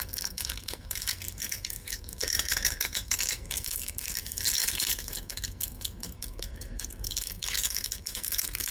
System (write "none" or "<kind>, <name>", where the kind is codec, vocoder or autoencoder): codec, SNAC